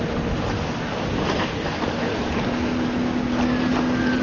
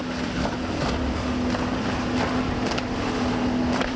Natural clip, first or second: first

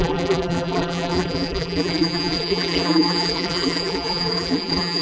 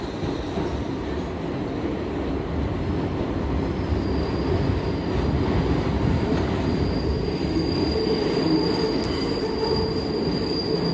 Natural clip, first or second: second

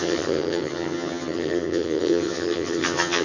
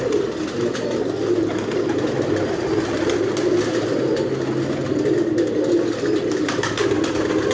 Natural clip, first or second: second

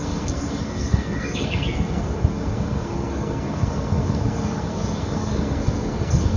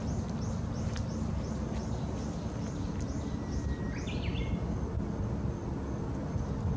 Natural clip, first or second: second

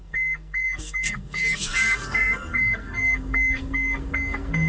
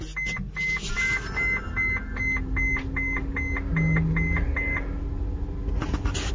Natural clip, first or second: second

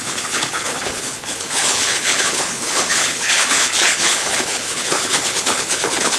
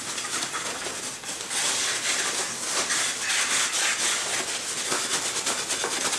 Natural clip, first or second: second